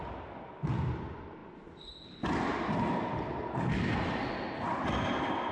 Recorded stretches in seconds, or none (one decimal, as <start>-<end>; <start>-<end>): 0.0-5.5